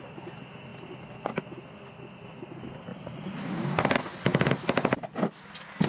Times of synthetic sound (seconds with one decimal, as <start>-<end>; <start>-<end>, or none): 2.9-3.4